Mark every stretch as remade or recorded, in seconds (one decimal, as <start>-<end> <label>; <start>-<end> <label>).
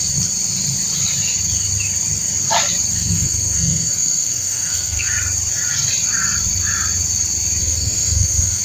0.0-2.9 recorded; 2.9-5.1 remade; 5.1-7.6 recorded; 7.6-8.6 remade